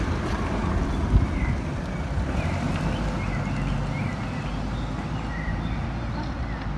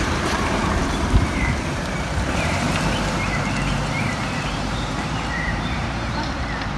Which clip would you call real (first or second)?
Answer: first